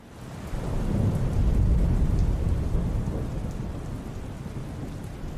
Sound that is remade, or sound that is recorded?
recorded